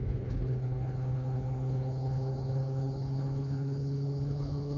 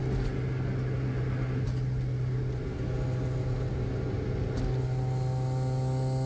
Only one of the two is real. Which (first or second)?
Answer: second